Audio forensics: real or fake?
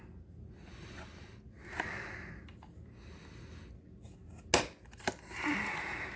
real